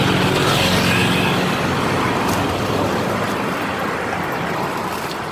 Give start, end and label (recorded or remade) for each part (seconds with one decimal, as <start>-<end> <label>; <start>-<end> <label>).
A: 0.0-5.3 recorded